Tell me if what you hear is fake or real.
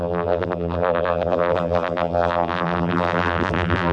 fake